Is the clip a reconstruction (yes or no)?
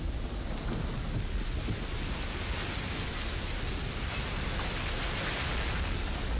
no